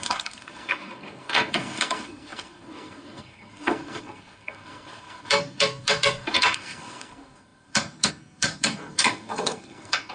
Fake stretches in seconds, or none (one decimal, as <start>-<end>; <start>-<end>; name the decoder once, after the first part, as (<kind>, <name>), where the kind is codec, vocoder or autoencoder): 0.0-10.1 (codec, SNAC)